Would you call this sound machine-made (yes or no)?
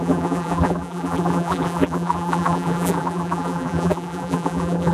yes